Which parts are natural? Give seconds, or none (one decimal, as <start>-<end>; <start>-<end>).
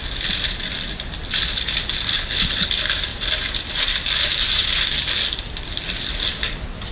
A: 0.0-2.1; 2.7-6.9